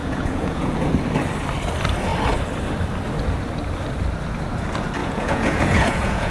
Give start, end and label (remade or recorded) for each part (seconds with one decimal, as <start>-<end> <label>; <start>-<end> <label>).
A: 0.0-0.9 remade; 0.9-5.0 recorded; 5.0-6.3 remade